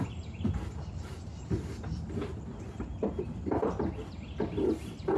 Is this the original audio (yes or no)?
yes